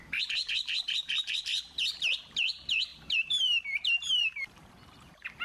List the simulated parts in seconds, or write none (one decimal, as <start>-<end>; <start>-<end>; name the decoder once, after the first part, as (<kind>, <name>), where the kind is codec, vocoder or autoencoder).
0.0-5.4 (vocoder, BigVGAN v2)